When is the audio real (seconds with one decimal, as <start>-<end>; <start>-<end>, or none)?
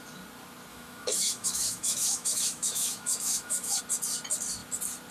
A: 0.0-0.7; 3.8-5.1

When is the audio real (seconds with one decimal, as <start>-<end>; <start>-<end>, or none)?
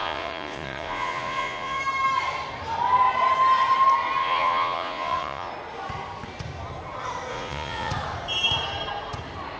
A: 1.8-4.2; 5.5-7.3; 7.9-9.6